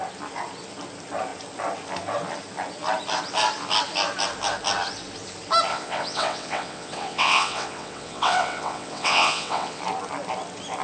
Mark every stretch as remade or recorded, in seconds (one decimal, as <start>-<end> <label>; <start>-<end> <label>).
0.0-5.7 recorded; 5.7-9.8 remade; 9.8-10.8 recorded